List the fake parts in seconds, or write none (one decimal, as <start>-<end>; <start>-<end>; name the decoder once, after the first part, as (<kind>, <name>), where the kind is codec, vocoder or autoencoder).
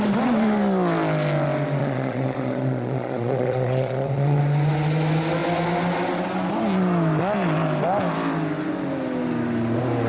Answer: 1.8-4.4 (vocoder, Vocos)